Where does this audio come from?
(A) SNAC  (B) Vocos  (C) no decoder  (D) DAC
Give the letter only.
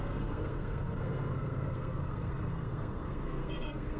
A